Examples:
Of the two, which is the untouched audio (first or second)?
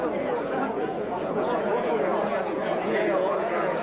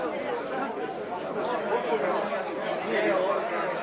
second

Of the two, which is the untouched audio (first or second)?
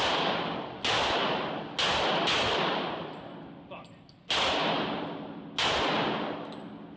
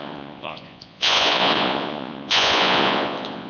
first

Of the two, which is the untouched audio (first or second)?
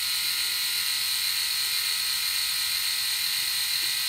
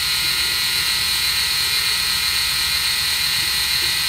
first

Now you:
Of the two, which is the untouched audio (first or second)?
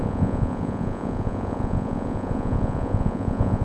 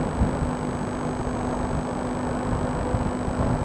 second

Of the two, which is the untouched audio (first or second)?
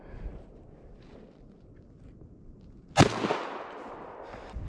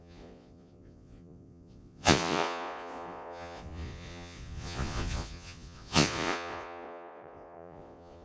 first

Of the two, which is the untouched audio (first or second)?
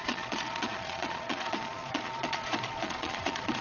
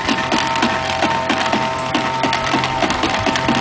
second